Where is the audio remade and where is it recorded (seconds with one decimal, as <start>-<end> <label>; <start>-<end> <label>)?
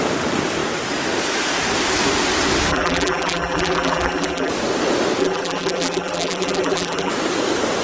0.0-2.7 recorded; 2.7-4.5 remade; 4.5-5.2 recorded; 5.2-7.1 remade; 7.1-7.8 recorded